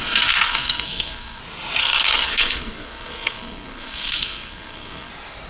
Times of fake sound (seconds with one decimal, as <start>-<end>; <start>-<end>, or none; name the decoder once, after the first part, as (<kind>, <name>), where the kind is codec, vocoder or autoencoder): 0.0-1.4 (codec, SNAC); 1.8-5.1